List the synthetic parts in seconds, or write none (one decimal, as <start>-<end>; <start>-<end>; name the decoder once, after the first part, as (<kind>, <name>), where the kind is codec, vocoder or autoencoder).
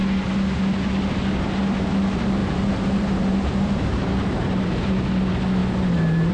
2.4-4.9 (vocoder, BigVGAN v2)